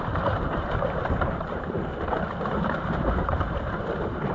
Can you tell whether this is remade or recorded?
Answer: remade